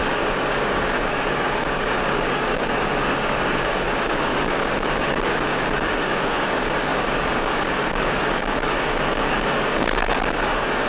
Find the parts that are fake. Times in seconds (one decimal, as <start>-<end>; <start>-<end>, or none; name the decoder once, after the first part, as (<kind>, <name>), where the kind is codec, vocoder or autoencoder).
0.0-10.9 (codec, DAC)